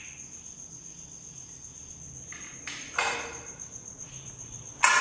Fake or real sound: real